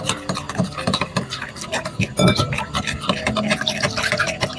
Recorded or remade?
recorded